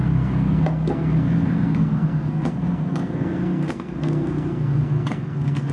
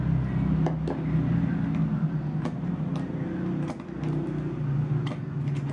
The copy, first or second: first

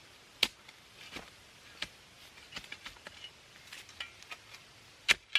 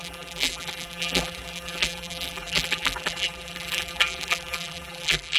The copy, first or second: second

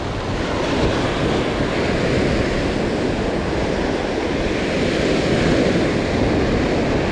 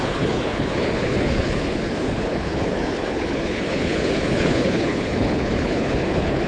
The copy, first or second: second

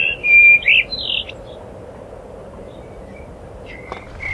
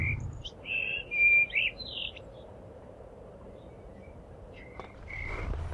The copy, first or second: second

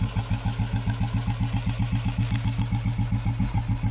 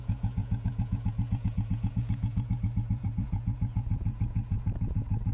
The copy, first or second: second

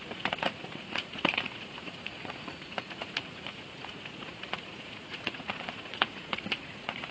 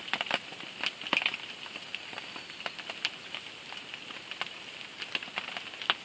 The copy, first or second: first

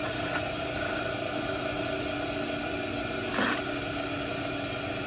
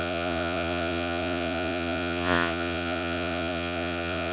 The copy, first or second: second